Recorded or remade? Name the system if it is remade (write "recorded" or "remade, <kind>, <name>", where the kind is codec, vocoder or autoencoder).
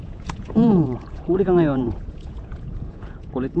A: remade, vocoder, Vocos